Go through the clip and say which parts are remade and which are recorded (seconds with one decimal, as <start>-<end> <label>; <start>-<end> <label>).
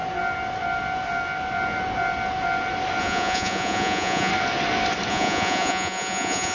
0.0-3.0 recorded; 3.0-4.3 remade; 4.3-5.1 recorded; 5.1-6.5 remade